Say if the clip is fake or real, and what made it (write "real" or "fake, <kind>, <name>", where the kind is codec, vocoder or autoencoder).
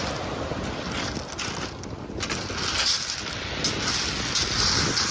real